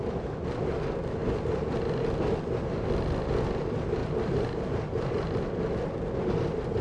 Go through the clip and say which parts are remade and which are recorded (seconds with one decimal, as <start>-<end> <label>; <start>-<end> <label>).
0.0-4.0 recorded; 4.0-4.7 remade; 4.7-6.8 recorded